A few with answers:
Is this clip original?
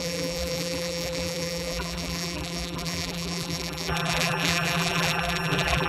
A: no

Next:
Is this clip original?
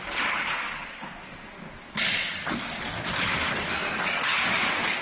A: yes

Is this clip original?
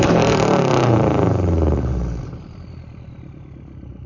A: no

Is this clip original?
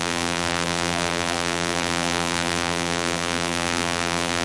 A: no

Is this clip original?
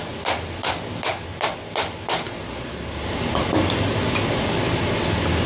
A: yes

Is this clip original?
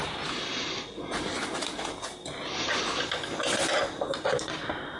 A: yes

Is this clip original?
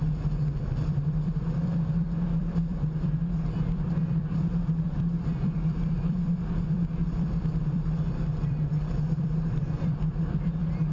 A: no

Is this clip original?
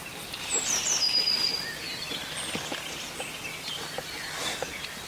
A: yes